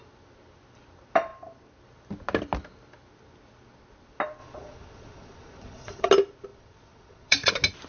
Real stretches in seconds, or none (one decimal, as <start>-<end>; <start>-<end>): 0.0-4.4; 6.1-6.5; 7.5-7.9